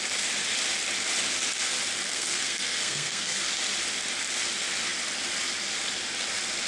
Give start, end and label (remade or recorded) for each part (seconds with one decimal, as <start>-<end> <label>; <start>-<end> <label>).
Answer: 0.0-2.1 recorded; 2.1-3.4 remade; 3.4-6.7 recorded